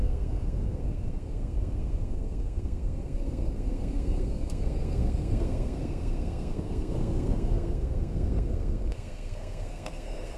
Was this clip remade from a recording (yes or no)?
yes